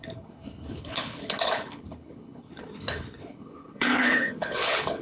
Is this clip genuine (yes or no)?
no